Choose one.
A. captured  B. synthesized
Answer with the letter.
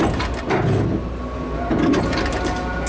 A